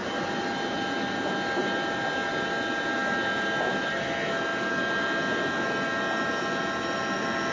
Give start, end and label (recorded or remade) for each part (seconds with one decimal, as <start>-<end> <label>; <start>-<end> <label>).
0.0-7.5 recorded